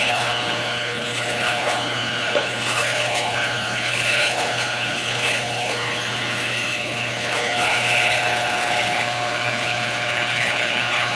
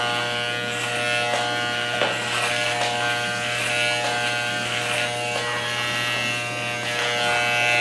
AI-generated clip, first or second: first